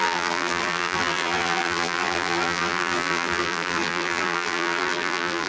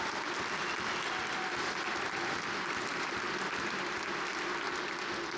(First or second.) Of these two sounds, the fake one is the first